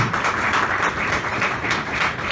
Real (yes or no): yes